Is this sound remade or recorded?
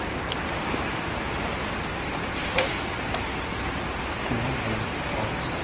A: recorded